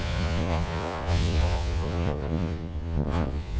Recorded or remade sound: remade